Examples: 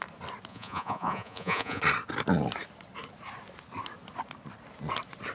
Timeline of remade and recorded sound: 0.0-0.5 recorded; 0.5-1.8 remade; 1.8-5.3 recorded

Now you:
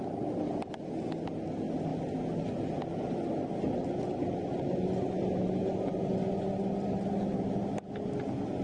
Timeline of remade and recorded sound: 0.0-8.6 recorded

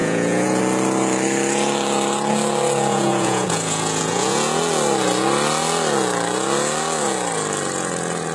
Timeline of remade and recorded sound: 0.0-0.6 remade; 0.6-2.9 recorded; 2.9-4.6 remade; 4.6-8.3 recorded